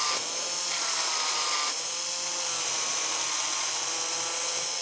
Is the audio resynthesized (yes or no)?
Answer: no